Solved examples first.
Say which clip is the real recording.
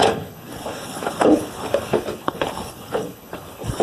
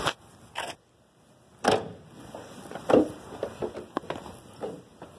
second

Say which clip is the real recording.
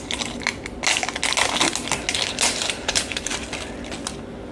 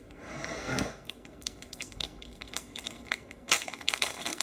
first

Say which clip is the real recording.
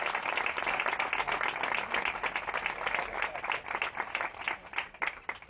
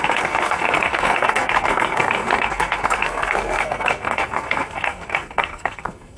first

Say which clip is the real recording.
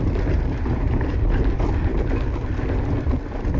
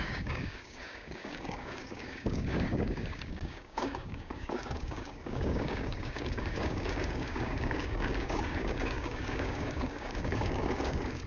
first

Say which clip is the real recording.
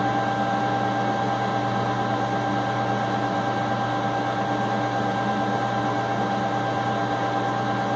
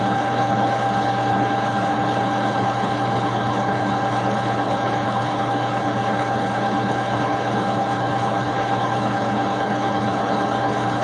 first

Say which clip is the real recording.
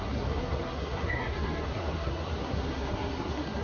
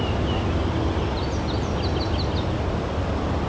second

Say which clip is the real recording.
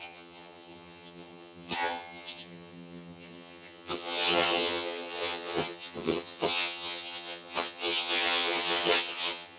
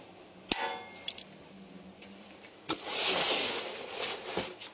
second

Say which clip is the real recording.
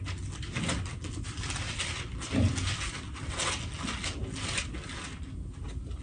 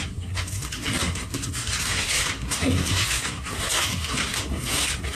first